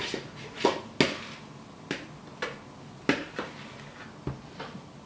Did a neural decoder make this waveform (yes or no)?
no